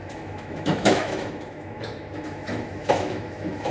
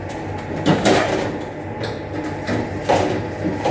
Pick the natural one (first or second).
second